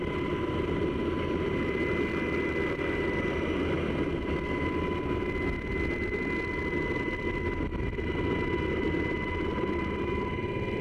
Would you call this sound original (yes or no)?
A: yes